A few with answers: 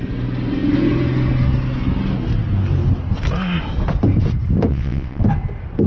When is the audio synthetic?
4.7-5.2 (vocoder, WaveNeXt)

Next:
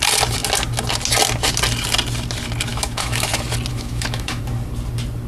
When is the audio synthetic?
2.7-3.3 (autoencoder, DAC-VAE); 3.7-4.4

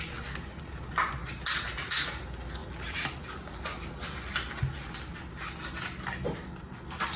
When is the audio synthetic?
none

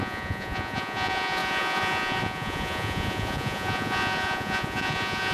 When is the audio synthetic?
0.0-5.3 (vocoder, Vocos)